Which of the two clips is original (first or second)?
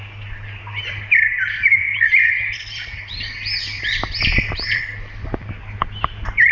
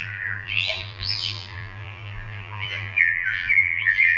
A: first